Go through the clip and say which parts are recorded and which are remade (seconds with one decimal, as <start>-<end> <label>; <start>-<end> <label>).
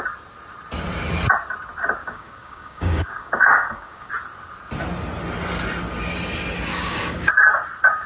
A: 0.0-2.0 recorded; 2.0-4.1 remade; 4.1-6.7 recorded; 6.7-7.3 remade; 7.3-8.1 recorded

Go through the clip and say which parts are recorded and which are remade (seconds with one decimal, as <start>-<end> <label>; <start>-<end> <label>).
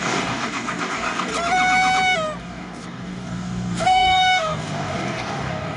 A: 0.0-1.3 remade; 1.3-2.4 recorded; 2.4-5.8 remade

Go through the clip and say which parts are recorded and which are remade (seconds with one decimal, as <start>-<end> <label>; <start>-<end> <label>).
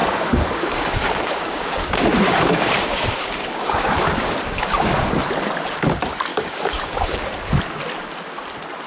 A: 0.0-5.2 remade; 5.2-6.3 recorded; 6.3-7.3 remade; 7.3-8.9 recorded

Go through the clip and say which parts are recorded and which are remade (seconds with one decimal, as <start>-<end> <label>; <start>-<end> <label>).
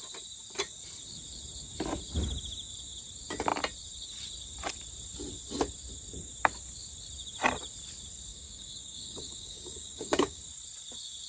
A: 0.0-8.3 recorded; 8.3-10.4 remade; 10.4-11.3 recorded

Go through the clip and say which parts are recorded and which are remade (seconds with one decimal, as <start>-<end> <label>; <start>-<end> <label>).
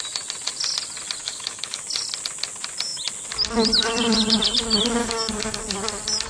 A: 0.0-1.2 recorded; 1.2-1.8 remade; 1.8-5.0 recorded; 5.0-5.6 remade; 5.6-6.3 recorded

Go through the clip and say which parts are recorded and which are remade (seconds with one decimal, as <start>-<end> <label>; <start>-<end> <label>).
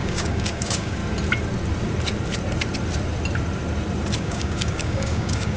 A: 0.0-1.0 remade; 1.0-4.2 recorded; 4.2-5.6 remade